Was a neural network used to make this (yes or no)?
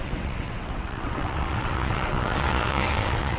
yes